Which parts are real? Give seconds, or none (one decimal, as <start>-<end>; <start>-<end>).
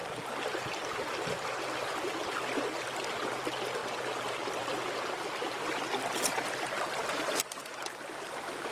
0.0-3.8; 4.9-8.7